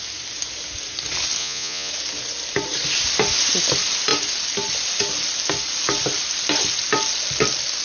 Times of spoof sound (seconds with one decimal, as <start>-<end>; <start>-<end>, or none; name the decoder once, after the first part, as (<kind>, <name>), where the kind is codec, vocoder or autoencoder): 1.4-1.9 (vocoder, Vocos)

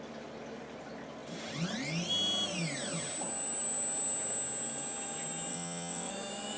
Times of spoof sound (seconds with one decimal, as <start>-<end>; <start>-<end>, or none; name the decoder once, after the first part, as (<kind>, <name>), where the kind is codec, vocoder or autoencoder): 5.5-6.1 (vocoder, WaveNeXt)

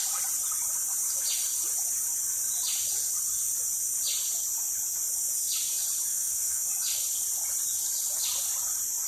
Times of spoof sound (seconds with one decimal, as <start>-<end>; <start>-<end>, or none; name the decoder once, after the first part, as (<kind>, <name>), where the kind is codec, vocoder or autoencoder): 6.1-6.7 (autoencoder, DAC-VAE)

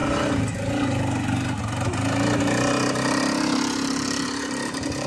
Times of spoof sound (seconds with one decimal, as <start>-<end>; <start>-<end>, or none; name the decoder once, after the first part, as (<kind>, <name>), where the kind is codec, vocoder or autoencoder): none

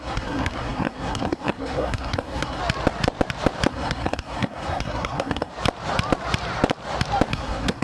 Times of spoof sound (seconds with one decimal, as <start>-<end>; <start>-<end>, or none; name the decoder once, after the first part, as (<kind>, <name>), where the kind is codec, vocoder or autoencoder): 0.0-2.6 (codec, SNAC); 3.7-5.5; 7.3-7.8

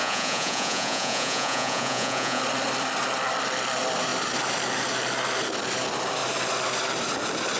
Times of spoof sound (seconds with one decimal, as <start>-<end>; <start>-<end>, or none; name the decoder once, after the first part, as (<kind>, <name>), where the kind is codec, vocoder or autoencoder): 0.0-2.4 (vocoder, Vocos)

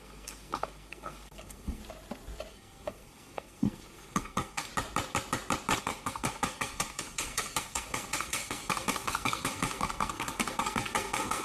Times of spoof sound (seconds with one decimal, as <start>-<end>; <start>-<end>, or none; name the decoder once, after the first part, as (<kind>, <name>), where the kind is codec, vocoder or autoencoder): 0.0-1.8 (codec, SNAC); 2.5-4.7; 5.8-11.4